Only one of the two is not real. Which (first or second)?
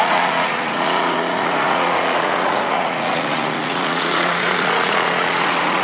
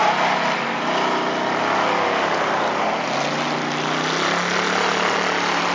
first